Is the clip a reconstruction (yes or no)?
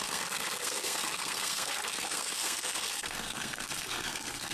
yes